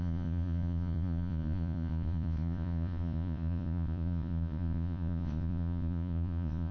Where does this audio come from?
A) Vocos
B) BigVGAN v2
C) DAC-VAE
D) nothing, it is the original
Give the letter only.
A